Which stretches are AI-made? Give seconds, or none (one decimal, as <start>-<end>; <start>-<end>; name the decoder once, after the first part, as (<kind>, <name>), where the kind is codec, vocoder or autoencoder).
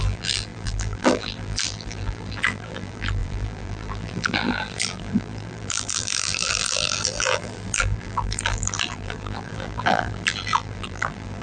0.0-11.4 (vocoder, BigVGAN v2)